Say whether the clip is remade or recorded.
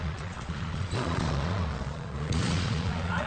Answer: remade